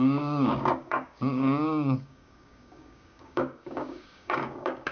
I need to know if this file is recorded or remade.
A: remade